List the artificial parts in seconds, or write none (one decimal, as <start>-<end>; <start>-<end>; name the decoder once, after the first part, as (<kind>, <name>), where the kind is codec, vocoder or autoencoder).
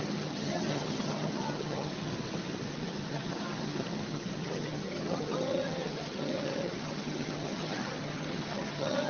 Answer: 0.0-2.1 (vocoder, HiFi-GAN); 2.7-9.1